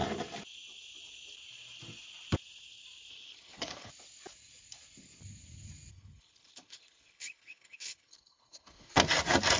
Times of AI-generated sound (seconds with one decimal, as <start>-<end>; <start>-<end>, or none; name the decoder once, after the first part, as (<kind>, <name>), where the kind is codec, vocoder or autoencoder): 3.1-3.9 (codec, HILCodec); 5.9-8.9